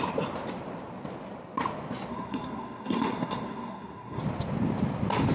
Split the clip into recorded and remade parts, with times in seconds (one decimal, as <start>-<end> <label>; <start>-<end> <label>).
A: 0.0-2.1 recorded; 2.1-4.2 remade; 4.2-5.3 recorded